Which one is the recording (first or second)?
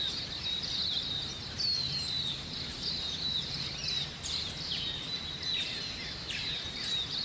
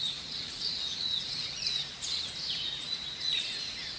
first